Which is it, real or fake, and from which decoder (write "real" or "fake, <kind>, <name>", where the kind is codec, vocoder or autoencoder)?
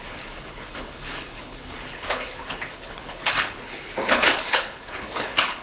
fake, codec, HILCodec